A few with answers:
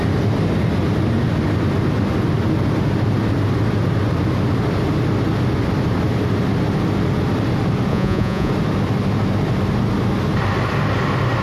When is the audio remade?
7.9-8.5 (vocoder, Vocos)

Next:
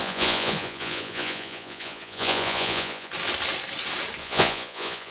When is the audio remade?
0.0-3.1 (vocoder, Vocos); 4.2-5.1

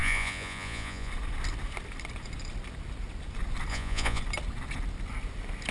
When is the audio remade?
0.0-1.1 (vocoder, Vocos); 3.7-4.2

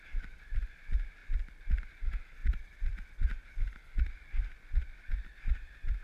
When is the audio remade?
none